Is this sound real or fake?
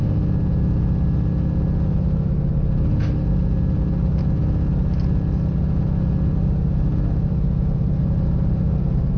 real